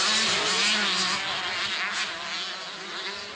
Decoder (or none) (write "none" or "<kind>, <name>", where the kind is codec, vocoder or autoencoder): none